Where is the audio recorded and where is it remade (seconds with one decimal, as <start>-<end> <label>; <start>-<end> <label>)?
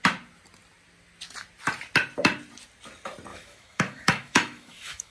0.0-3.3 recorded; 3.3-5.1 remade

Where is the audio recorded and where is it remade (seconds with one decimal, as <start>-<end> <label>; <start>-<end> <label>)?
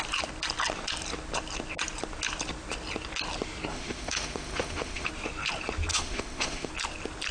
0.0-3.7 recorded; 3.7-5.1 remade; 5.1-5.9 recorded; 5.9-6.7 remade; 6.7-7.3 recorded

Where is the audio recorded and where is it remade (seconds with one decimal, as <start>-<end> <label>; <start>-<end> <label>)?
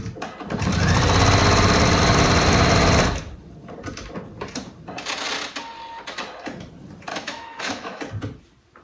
0.0-7.1 recorded; 7.1-8.0 remade; 8.0-8.8 recorded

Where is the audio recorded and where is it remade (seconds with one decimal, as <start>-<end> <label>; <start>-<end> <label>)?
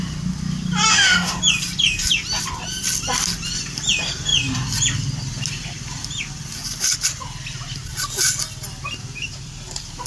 0.0-0.9 recorded; 0.9-1.4 remade; 1.4-10.1 recorded